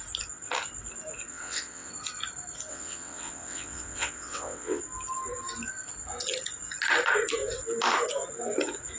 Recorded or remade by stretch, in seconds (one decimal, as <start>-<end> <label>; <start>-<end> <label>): 0.0-1.3 recorded; 1.3-1.9 remade; 1.9-2.7 recorded; 2.7-4.8 remade; 4.8-9.0 recorded